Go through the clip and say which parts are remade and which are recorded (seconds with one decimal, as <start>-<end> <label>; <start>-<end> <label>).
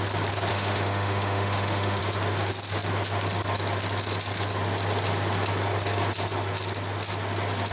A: 0.0-0.5 recorded; 0.5-2.0 remade; 2.0-7.7 recorded